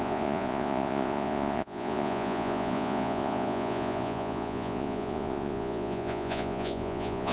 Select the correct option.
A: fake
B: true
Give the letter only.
A